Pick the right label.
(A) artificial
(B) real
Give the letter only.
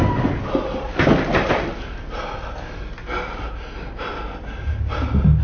B